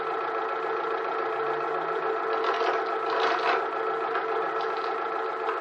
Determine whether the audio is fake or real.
real